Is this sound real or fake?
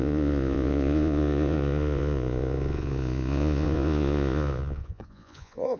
fake